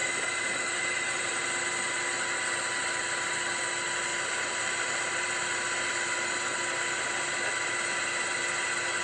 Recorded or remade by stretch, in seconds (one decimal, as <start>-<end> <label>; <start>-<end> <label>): 0.0-1.4 remade; 1.4-4.1 recorded; 4.1-5.5 remade; 5.5-9.0 recorded